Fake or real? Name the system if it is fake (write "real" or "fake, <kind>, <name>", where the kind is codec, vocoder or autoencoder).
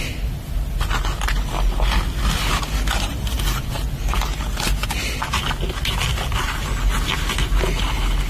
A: real